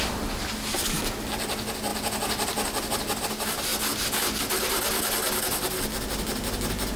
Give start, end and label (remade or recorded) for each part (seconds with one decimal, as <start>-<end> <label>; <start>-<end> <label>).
0.0-7.0 recorded